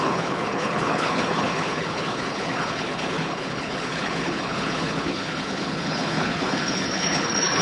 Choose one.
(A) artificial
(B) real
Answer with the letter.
A